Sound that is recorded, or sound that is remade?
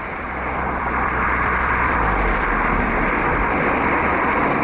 remade